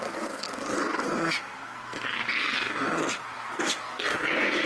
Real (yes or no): no